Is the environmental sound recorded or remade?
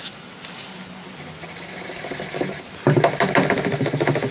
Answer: recorded